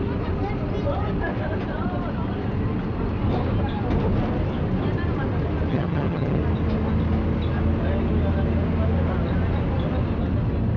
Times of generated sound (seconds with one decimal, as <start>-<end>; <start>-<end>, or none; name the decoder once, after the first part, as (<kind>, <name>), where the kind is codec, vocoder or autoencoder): 5.7-6.4 (vocoder, HiFi-GAN)